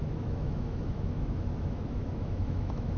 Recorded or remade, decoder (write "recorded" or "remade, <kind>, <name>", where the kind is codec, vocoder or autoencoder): remade, autoencoder, DAC-VAE